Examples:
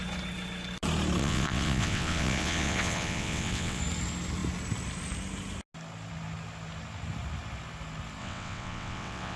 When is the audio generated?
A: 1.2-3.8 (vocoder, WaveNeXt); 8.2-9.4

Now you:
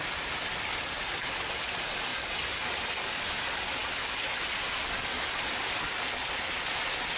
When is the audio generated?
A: none